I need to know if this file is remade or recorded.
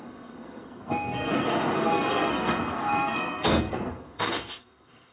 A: remade